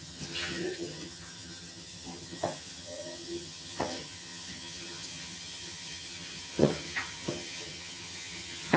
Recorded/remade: remade